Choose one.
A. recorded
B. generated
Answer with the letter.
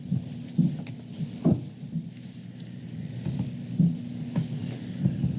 A